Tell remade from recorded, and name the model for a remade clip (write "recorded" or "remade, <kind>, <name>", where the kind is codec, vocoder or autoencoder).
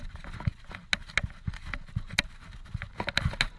recorded